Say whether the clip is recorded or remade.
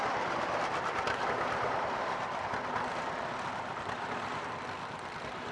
remade